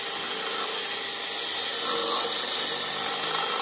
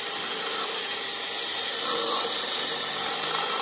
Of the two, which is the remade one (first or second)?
second